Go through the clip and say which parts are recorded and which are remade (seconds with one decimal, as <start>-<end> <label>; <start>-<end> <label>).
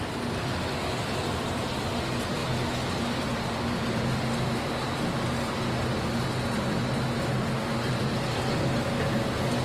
0.0-9.6 recorded